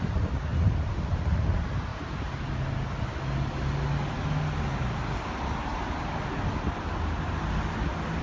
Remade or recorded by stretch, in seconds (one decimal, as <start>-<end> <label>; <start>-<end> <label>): 0.0-8.2 recorded